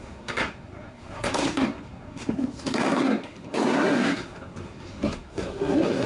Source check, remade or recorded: remade